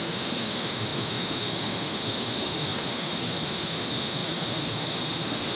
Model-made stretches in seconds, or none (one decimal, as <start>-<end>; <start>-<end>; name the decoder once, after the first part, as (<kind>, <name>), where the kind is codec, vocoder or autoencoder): 0.0-5.6 (autoencoder, DAC-VAE)